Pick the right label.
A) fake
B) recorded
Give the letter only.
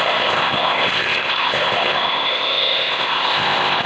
A